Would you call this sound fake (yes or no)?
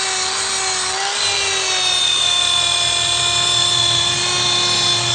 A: no